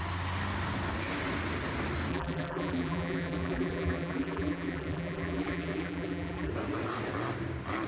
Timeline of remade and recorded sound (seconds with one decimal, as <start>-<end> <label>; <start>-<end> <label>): 0.0-2.1 recorded; 2.1-6.5 remade; 6.5-7.9 recorded